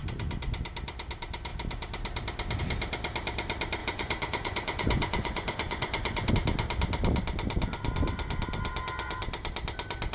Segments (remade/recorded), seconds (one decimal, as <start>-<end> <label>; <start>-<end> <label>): 0.0-3.8 recorded; 3.8-6.3 remade; 6.3-10.1 recorded